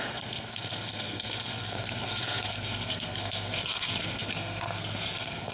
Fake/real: fake